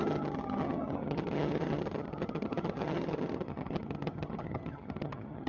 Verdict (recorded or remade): remade